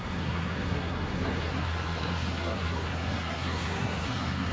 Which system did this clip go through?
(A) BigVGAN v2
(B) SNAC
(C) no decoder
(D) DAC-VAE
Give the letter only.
B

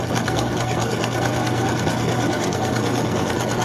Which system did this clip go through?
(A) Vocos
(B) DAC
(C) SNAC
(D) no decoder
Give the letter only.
C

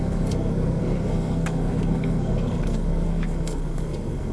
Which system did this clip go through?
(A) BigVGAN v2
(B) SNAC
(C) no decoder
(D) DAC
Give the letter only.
B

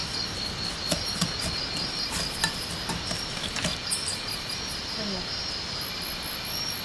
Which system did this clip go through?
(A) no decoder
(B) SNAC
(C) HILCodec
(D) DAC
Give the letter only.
A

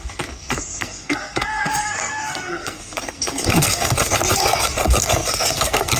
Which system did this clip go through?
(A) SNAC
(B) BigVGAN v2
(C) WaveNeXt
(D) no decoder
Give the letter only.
A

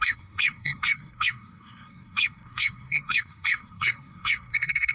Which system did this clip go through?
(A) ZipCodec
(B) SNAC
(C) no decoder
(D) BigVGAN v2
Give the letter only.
B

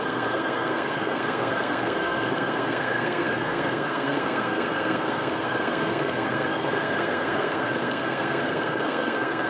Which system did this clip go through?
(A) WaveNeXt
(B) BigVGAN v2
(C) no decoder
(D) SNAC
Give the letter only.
D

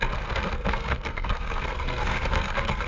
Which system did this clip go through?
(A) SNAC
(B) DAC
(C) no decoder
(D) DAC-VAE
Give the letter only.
A